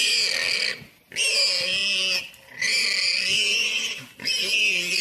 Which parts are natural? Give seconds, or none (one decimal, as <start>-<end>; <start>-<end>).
0.0-5.0